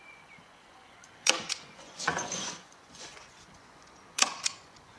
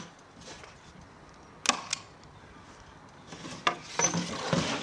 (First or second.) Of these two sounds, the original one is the second